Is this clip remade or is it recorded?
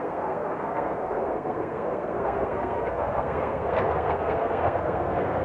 remade